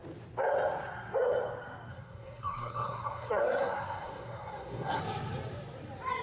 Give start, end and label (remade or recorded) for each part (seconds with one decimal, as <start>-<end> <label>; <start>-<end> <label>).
0.0-1.9 recorded; 1.9-5.0 remade; 5.0-6.2 recorded